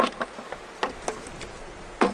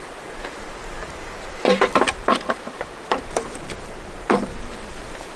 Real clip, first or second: first